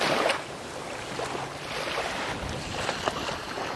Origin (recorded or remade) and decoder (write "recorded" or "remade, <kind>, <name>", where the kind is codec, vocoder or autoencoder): recorded